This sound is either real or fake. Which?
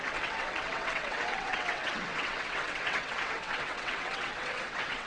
fake